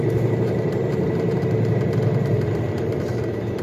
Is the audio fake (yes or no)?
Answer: yes